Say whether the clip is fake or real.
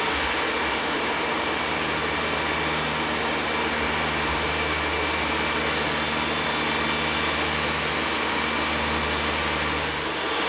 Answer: real